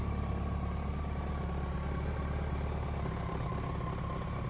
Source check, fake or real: real